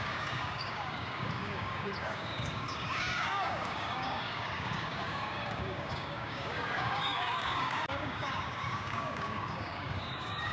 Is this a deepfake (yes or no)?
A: yes